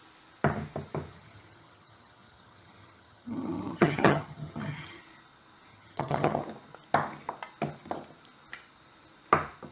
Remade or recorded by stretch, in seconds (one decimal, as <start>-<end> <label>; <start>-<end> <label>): 0.0-1.1 recorded; 1.1-5.0 remade; 5.0-5.7 recorded; 5.7-6.4 remade; 6.4-9.7 recorded